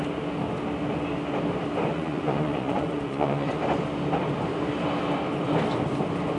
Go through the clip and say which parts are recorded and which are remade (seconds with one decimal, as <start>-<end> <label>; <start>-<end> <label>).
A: 0.0-1.9 recorded; 1.9-3.6 remade; 3.6-6.4 recorded